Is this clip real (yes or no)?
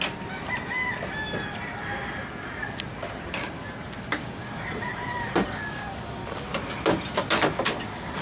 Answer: yes